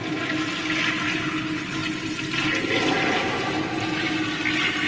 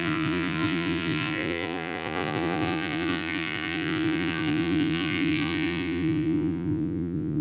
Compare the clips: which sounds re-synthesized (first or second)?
second